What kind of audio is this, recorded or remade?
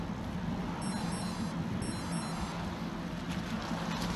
recorded